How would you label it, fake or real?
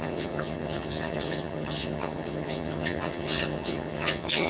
fake